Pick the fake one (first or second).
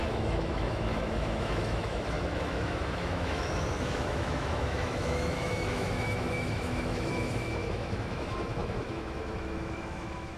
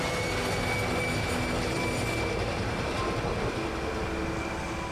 first